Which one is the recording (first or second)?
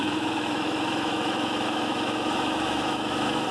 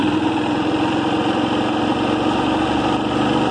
second